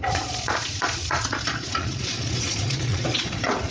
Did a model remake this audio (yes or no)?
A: yes